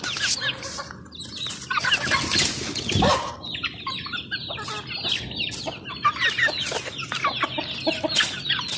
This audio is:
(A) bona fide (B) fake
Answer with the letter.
A